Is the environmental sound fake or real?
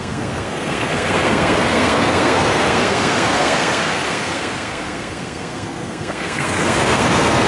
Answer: fake